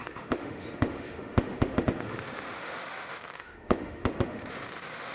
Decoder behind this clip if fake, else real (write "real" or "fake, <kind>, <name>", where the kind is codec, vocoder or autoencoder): fake, autoencoder, DAC-VAE